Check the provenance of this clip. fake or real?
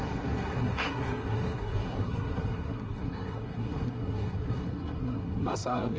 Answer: fake